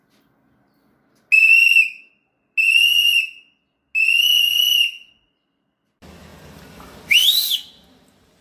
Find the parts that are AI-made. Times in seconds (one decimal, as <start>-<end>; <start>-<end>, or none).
1.4-2.1